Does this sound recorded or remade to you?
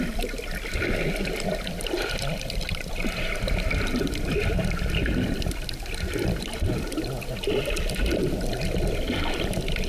recorded